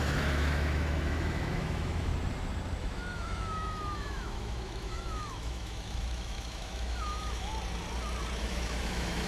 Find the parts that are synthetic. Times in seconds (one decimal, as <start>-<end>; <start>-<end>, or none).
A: 0.0-2.1; 2.8-7.5; 8.4-9.3